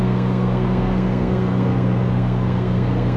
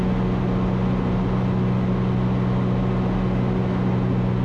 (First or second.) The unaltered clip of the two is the second